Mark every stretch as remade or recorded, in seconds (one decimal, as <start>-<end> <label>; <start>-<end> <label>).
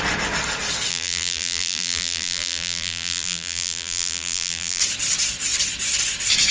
0.0-0.9 recorded; 0.9-4.8 remade; 4.8-6.5 recorded